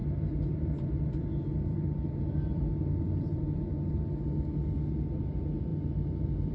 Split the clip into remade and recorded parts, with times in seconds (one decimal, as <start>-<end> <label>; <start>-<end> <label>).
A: 0.0-3.9 remade; 3.9-6.5 recorded